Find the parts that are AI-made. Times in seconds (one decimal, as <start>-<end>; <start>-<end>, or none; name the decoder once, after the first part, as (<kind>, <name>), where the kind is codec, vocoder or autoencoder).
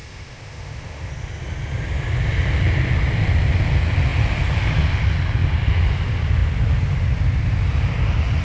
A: 0.0-1.1 (autoencoder, DAC-VAE)